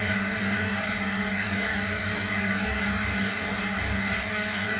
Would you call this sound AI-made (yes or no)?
yes